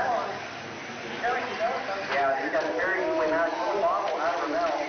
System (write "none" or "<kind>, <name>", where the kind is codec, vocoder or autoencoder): none